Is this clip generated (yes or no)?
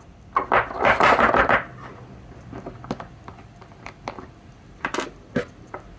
no